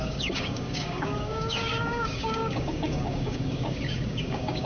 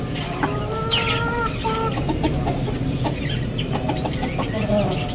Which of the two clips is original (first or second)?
second